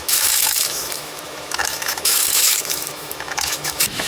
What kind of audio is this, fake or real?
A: fake